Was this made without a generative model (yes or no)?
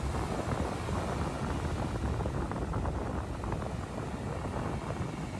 yes